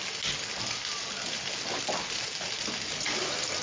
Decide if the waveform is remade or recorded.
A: recorded